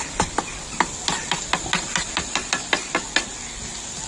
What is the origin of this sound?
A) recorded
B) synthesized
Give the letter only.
A